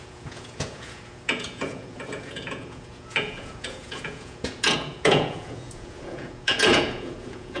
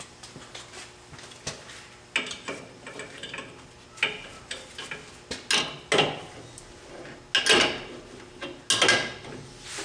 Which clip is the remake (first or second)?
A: first